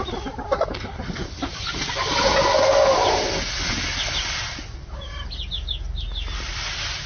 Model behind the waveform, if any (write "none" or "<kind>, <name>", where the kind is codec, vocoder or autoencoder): none